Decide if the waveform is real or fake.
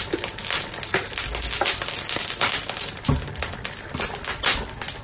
real